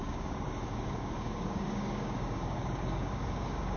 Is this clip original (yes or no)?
no